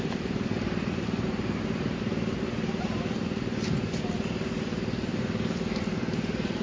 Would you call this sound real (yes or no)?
no